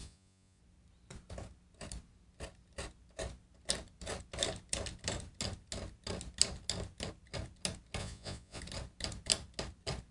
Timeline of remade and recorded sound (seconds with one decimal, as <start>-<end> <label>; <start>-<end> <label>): 0.0-0.6 remade; 0.6-8.0 recorded; 8.0-8.6 remade; 8.6-10.1 recorded